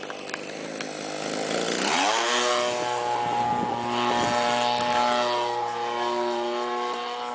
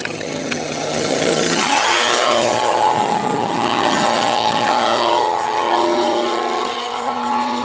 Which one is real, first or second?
first